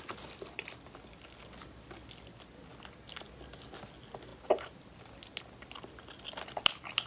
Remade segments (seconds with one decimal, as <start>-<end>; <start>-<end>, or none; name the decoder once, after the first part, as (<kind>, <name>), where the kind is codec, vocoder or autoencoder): none

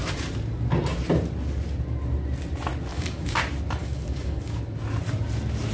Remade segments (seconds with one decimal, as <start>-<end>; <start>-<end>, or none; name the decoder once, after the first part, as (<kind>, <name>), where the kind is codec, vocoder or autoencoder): 2.9-3.4 (codec, DAC); 3.8-4.6